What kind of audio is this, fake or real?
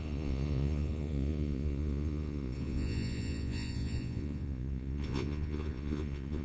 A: fake